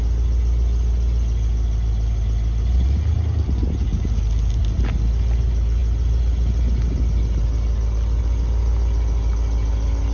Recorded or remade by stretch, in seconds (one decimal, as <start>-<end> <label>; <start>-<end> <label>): 0.0-10.1 recorded